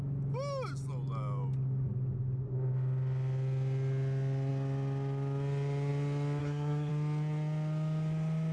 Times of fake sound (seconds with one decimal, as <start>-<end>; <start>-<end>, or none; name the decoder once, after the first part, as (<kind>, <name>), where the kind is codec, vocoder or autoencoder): 6.4-6.9 (codec, SNAC)